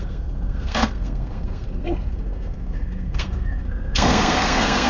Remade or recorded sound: remade